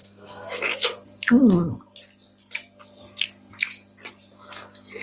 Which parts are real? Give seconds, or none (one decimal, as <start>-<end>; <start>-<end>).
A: 0.5-5.0